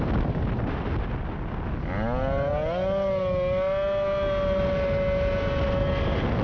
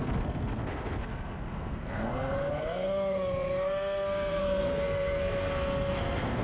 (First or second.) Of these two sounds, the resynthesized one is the second